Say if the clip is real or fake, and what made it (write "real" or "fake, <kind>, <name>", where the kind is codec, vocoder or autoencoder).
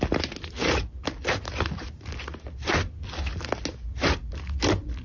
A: real